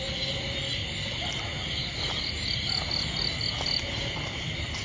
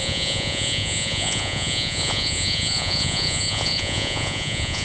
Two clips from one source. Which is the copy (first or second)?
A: second